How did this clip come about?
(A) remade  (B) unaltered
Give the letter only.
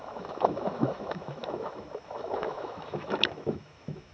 A